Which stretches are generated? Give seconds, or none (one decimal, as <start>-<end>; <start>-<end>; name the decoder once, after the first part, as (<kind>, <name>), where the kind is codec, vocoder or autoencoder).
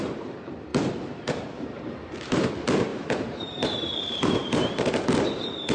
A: 0.7-2.5 (vocoder, BigVGAN v2); 2.9-4.9